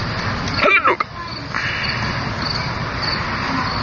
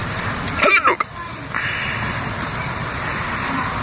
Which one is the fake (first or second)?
second